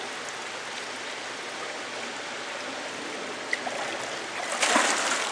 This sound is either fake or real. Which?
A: real